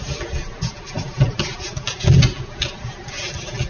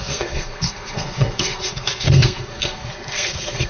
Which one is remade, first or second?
second